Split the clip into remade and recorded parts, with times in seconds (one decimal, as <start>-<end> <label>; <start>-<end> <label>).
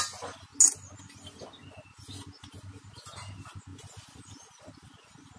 0.0-5.4 recorded